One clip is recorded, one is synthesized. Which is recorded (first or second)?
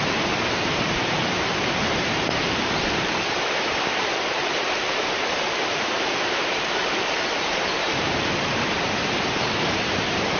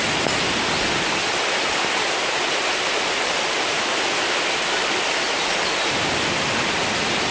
second